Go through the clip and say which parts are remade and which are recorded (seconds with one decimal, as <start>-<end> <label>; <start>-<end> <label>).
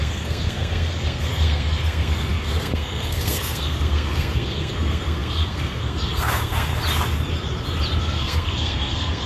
0.0-6.7 remade; 6.7-8.0 recorded; 8.0-9.3 remade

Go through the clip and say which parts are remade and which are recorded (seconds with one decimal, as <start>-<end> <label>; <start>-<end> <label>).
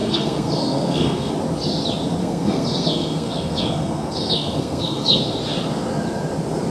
0.0-1.3 remade; 1.3-2.2 recorded; 2.2-5.2 remade; 5.2-6.7 recorded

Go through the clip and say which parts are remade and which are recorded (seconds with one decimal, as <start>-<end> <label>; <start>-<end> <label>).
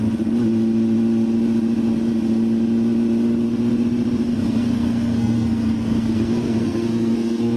0.0-4.3 recorded; 4.3-7.6 remade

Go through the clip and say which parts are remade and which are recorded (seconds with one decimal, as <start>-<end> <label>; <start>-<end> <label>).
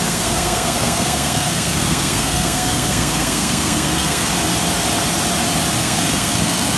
0.0-4.3 remade; 4.3-5.8 recorded; 5.8-6.8 remade